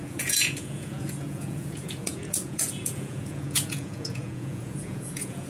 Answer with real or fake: fake